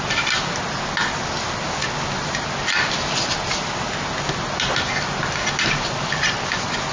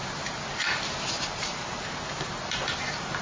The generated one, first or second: second